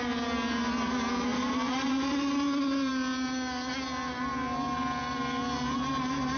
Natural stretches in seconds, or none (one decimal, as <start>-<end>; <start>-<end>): 0.0-1.3; 1.9-6.4